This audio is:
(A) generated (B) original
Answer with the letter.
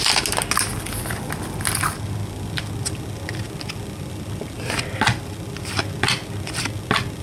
B